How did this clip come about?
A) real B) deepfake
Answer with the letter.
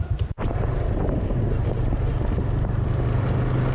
B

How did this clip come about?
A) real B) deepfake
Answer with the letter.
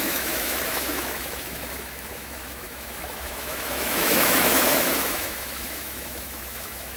B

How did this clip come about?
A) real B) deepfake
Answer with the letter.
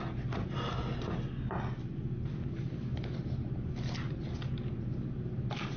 A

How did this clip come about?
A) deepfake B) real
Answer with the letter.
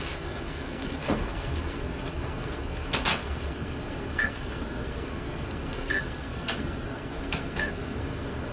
A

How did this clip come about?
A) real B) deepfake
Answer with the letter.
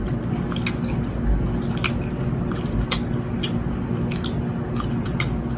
A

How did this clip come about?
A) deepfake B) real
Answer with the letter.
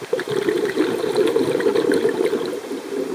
A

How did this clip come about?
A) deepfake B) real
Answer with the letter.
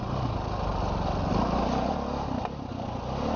B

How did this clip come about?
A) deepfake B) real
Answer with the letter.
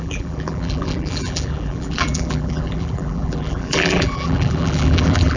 A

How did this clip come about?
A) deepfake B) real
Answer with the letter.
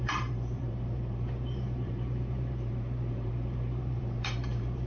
A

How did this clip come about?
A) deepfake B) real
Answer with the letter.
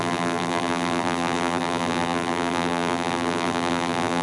A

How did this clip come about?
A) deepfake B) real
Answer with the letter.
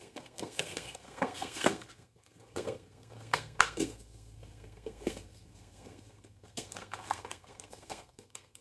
A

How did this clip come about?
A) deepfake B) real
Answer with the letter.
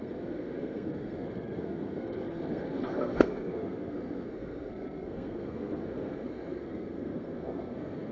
A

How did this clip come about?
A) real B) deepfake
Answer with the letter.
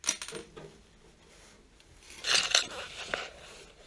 A